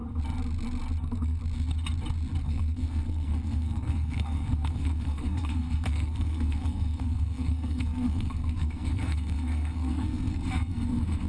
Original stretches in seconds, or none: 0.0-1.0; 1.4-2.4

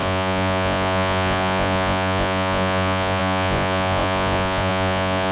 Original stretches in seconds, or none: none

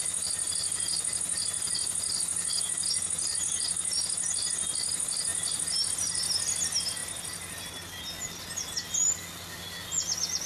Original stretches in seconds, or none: 0.0-10.5

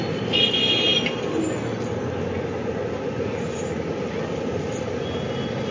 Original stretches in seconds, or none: 0.0-5.7

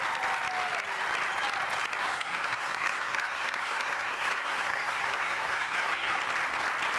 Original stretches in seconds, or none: 0.0-2.0; 6.2-7.0